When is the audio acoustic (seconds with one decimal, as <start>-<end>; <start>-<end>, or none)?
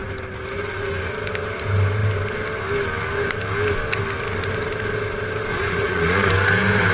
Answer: 0.0-5.5; 6.3-6.9